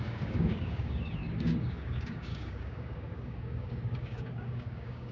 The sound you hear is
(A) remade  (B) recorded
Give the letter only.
A